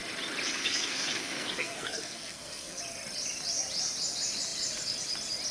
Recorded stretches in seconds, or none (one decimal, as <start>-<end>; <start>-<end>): 0.0-0.6; 2.8-5.5